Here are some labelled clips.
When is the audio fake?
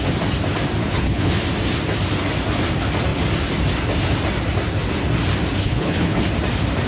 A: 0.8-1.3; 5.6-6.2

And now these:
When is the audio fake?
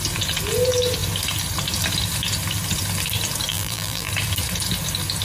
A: 3.5-4.1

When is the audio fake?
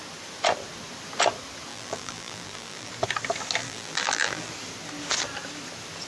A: 1.7-2.9; 3.6-4.5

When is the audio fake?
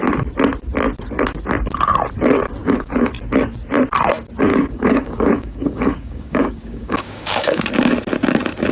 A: 2.6-3.1; 4.5-7.6